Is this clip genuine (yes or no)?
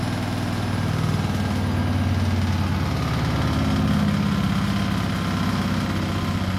yes